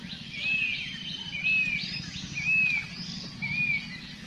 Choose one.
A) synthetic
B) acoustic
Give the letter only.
B